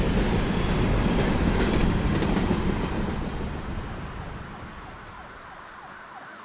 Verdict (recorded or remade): recorded